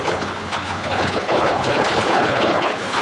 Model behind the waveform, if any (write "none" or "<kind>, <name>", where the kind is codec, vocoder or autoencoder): codec, HILCodec